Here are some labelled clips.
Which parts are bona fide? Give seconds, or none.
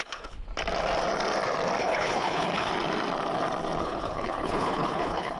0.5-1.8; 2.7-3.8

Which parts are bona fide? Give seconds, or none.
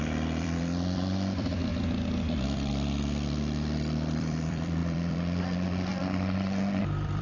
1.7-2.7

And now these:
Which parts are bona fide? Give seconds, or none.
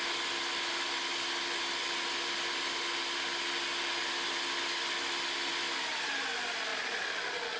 0.0-7.6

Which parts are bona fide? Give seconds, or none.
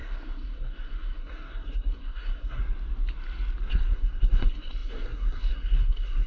2.6-3.7